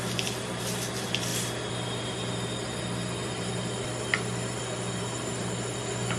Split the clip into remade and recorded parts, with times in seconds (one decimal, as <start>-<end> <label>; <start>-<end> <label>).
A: 0.0-6.2 recorded